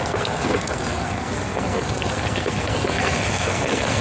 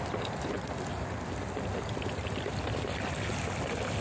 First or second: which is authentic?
second